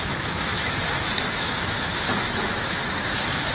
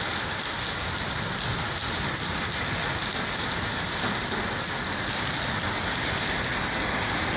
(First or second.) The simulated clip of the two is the first